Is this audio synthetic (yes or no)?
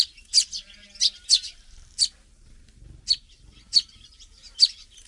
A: no